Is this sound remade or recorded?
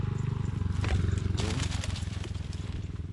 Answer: recorded